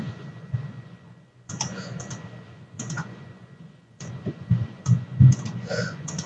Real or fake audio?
fake